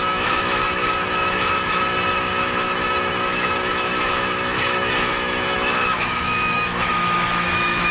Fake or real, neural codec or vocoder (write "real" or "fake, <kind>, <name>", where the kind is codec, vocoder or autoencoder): fake, autoencoder, DAC-VAE